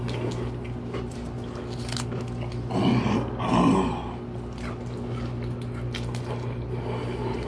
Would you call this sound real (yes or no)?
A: yes